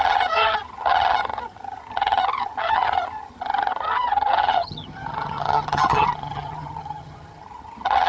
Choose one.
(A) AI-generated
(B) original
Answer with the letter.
A